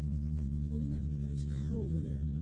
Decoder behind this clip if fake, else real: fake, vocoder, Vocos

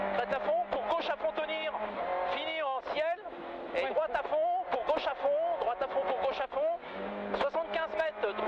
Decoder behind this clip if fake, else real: real